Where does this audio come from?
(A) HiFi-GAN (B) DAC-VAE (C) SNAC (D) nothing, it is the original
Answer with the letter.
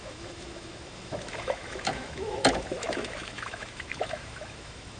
B